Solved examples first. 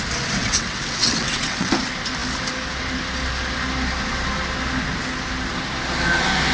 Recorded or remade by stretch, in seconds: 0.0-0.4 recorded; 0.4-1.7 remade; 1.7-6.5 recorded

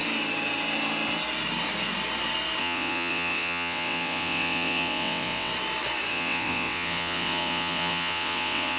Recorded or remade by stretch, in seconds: 0.0-2.6 recorded; 2.6-5.5 remade; 5.5-6.1 recorded; 6.1-8.8 remade

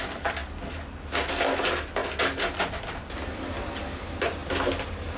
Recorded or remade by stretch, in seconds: 0.0-5.2 recorded

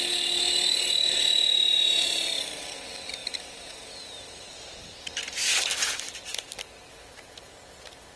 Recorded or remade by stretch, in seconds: 0.0-8.2 recorded

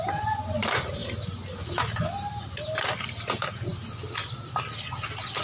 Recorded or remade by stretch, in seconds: 0.0-5.4 recorded

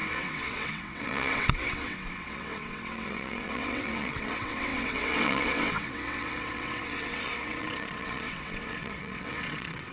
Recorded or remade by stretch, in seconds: 0.0-9.9 remade

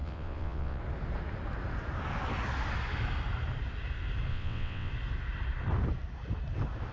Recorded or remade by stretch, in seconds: 0.0-0.8 remade; 0.8-4.3 recorded; 4.3-4.9 remade; 4.9-6.9 recorded

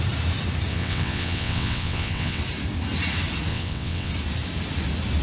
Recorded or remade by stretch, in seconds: 0.0-0.7 recorded; 0.7-2.4 remade; 2.4-3.5 recorded; 3.5-4.1 remade; 4.1-5.2 recorded